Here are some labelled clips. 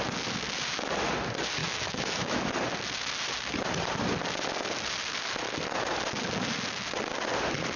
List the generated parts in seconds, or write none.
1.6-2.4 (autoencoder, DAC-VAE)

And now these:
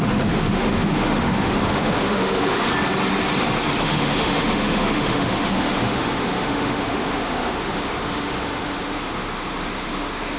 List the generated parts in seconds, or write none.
0.0-2.7 (autoencoder, DAC-VAE); 3.8-10.4